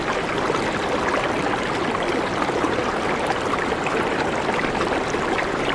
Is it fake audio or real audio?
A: real